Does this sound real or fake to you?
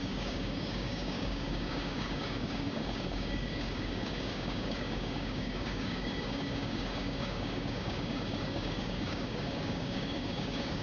fake